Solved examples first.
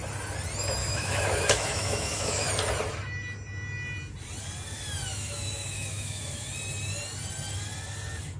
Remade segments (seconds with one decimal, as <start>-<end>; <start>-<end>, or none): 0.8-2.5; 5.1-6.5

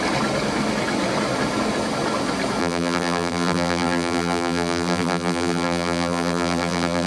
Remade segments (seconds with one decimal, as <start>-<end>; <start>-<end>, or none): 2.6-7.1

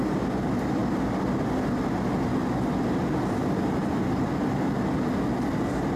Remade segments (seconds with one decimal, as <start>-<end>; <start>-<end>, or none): none

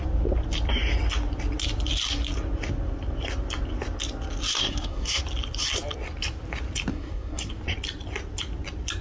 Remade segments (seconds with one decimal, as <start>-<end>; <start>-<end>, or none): 4.5-5.2; 6.9-7.5

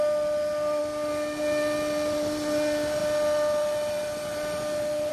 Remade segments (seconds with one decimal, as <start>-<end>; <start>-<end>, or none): none

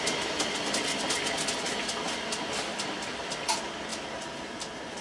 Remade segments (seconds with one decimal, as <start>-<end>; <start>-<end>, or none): 3.9-5.0

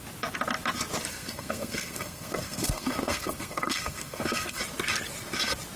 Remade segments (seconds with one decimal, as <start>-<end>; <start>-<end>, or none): 1.1-4.6